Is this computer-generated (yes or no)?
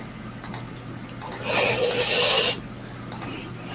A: no